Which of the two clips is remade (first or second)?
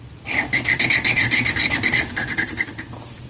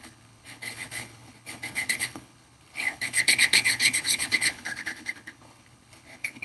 second